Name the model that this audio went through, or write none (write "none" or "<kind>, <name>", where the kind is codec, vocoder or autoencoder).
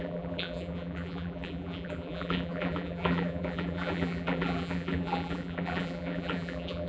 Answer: vocoder, BigVGAN v2